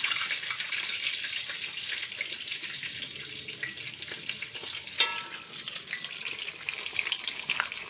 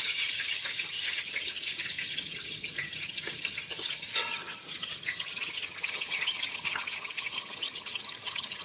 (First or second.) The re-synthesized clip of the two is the second